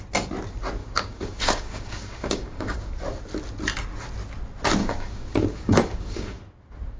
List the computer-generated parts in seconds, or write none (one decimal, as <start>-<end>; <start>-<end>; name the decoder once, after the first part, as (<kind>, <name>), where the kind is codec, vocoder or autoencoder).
0.8-2.9 (codec, DAC); 4.8-6.4